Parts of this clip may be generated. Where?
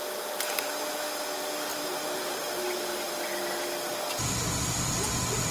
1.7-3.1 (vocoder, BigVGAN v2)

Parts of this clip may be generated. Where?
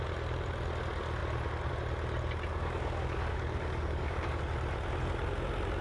2.5-4.4 (codec, DAC)